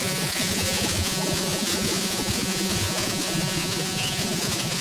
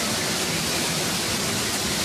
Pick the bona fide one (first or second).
second